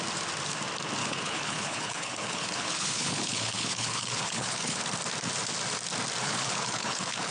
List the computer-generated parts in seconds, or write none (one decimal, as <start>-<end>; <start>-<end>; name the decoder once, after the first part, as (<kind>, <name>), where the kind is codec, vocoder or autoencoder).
1.0-4.8 (codec, HILCodec); 6.2-7.3